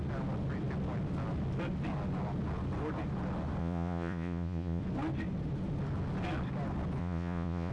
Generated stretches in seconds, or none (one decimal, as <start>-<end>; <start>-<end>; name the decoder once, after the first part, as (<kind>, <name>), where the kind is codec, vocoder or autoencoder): 3.6-4.8 (vocoder, Vocos); 7.0-7.7